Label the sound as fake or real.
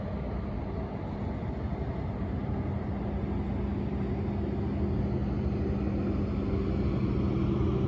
real